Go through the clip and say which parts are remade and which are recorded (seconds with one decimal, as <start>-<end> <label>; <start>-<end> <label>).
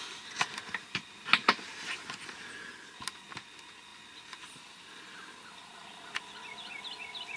0.0-1.4 recorded; 1.4-2.2 remade; 2.2-7.4 recorded